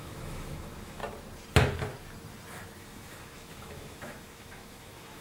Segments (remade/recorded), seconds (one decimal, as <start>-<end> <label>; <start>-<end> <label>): 0.0-1.0 remade; 1.0-2.8 recorded; 2.8-5.2 remade